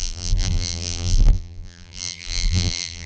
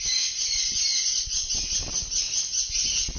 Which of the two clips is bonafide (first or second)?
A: second